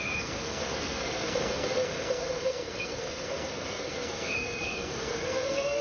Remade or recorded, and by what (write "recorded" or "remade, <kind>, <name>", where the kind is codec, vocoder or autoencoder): remade, codec, SNAC